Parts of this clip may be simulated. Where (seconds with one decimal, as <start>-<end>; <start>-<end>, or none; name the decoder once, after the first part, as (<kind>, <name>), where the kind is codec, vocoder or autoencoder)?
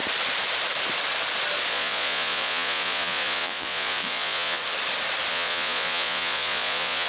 1.7-4.6 (vocoder, Vocos); 5.3-7.1